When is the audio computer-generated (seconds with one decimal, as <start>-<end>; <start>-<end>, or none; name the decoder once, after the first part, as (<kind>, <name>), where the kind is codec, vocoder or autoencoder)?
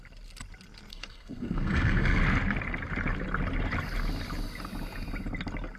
0.9-2.2 (codec, SNAC)